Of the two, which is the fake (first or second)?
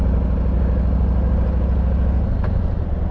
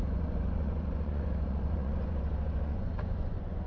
second